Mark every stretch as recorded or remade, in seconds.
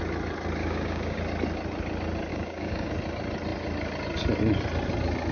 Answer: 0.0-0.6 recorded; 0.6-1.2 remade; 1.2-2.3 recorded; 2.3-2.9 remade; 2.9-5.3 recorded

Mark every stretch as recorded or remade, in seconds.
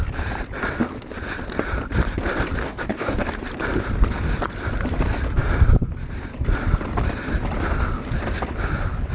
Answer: 0.0-2.6 recorded; 2.6-3.3 remade; 3.3-9.1 recorded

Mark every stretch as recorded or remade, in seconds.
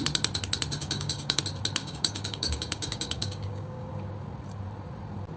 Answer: 0.0-0.8 recorded; 0.8-1.4 remade; 1.4-1.8 recorded; 1.8-3.9 remade; 3.9-5.4 recorded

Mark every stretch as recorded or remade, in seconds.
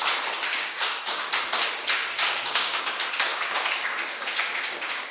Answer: 0.0-0.5 recorded; 0.5-1.3 remade; 1.3-2.0 recorded; 2.0-2.8 remade; 2.8-3.3 recorded; 3.3-5.1 remade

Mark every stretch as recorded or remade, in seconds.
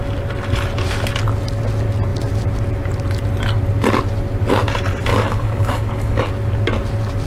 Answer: 0.0-5.1 recorded; 5.1-6.3 remade; 6.3-7.3 recorded